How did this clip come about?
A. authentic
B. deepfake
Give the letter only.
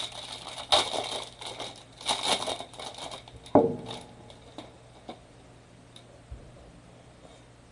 A